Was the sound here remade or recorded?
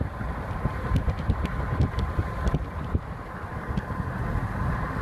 recorded